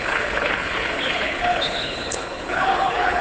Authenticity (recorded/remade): remade